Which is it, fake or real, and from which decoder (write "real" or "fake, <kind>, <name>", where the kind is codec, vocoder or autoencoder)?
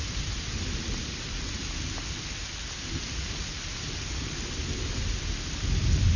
real